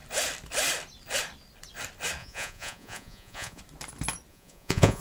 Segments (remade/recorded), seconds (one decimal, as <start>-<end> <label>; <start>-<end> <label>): 0.0-2.2 recorded; 2.2-3.6 remade; 3.6-4.3 recorded; 4.3-5.0 remade